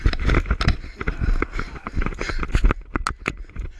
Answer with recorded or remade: recorded